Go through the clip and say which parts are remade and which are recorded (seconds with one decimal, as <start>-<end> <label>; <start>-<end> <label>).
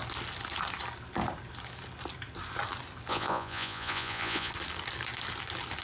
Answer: 0.0-3.1 recorded; 3.1-4.5 remade; 4.5-5.8 recorded